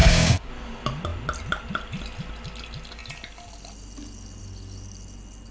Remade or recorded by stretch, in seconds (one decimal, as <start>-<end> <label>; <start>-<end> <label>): 0.0-0.5 remade; 0.5-5.5 recorded